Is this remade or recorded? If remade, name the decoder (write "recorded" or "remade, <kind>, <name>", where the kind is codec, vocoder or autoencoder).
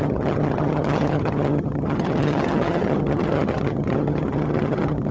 remade, vocoder, HiFi-GAN